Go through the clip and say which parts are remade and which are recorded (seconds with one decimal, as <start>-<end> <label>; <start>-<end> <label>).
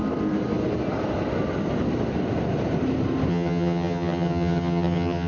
0.0-3.3 recorded; 3.3-5.3 remade